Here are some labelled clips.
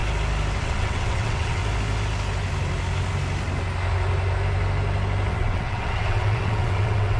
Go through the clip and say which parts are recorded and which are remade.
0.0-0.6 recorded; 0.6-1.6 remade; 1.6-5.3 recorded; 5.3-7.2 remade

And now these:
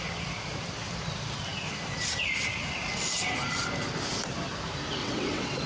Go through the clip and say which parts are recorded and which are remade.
0.0-5.0 recorded; 5.0-5.7 remade